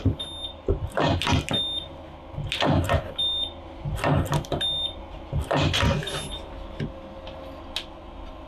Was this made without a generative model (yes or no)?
yes